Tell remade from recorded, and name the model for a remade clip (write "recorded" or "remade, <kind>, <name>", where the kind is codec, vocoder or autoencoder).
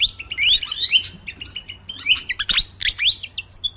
recorded